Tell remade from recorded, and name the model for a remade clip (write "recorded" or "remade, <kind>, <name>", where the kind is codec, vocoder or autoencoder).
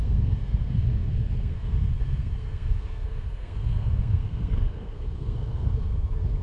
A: remade, codec, SNAC